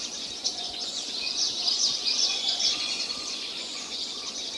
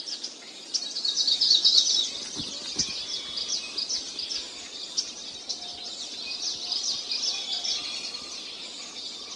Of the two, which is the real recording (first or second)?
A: second